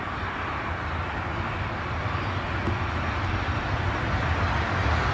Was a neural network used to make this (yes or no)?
no